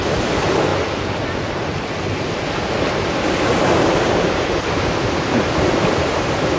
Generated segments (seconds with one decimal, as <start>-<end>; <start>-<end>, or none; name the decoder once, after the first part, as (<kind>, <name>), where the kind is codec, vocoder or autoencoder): none